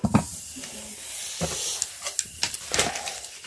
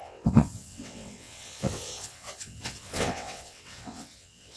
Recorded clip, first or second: first